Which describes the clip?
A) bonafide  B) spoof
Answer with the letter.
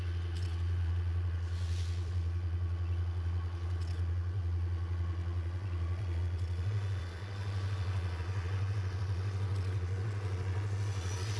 B